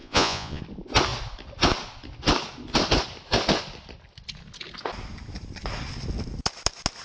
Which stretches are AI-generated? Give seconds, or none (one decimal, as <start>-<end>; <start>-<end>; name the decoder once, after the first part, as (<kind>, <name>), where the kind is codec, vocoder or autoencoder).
0.0-0.6 (vocoder, Vocos)